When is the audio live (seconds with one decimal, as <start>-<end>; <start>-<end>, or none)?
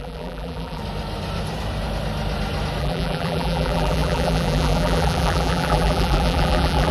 0.8-2.8